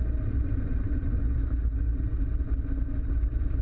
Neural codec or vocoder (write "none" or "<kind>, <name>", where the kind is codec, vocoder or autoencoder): none